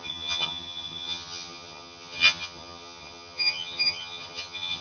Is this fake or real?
fake